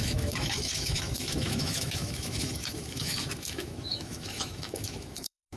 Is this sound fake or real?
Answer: fake